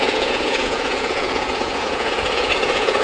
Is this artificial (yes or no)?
yes